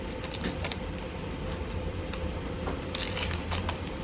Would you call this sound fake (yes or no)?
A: yes